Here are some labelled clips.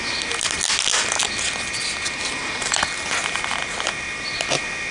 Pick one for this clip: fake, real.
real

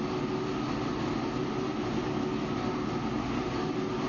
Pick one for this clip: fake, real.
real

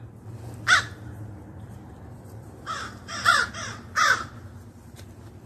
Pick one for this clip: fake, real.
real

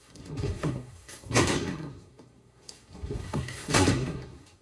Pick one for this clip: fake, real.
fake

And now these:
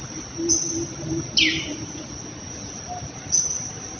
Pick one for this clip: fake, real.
real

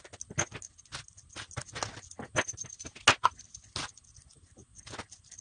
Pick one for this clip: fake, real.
real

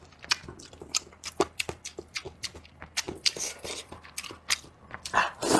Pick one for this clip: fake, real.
real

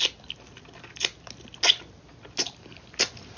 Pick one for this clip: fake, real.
real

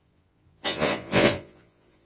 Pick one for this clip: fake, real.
fake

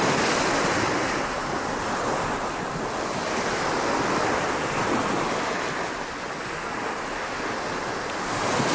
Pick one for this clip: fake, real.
real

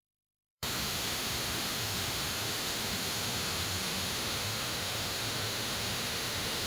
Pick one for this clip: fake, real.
fake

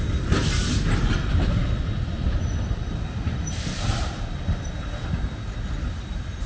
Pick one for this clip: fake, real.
real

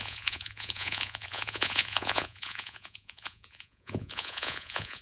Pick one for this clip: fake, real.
fake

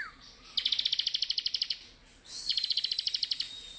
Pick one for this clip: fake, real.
real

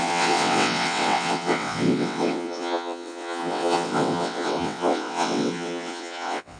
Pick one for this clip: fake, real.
fake